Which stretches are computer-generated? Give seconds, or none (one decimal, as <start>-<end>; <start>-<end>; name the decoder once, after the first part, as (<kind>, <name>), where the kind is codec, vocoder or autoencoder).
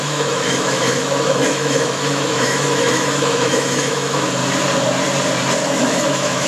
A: 0.0-4.4 (autoencoder, DAC-VAE); 5.8-6.5